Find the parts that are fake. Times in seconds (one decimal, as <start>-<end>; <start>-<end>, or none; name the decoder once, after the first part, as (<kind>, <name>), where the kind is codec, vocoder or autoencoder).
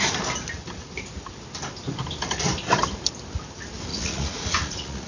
3.9-5.1 (vocoder, Vocos)